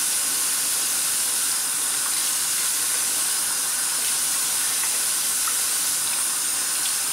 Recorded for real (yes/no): no